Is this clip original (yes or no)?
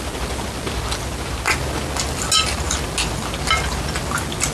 yes